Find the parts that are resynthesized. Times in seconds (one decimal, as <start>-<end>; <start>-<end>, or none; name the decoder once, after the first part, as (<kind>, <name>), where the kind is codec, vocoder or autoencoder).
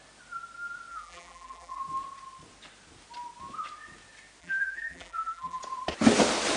0.9-1.8 (vocoder, BigVGAN v2); 4.4-5.6